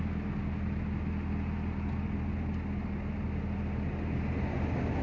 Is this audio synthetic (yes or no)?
no